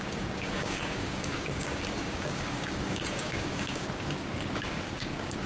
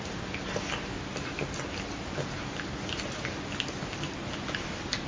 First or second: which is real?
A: second